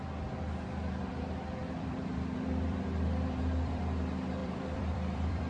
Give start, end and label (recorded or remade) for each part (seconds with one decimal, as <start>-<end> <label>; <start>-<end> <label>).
0.0-1.6 recorded; 1.6-3.8 remade; 3.8-4.4 recorded; 4.4-5.5 remade